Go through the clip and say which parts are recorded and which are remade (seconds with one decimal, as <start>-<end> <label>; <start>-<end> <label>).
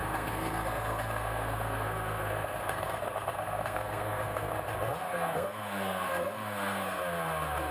0.0-4.5 remade; 4.5-5.0 recorded; 5.0-7.0 remade; 7.0-7.7 recorded